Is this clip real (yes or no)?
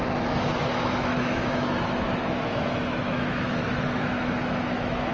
no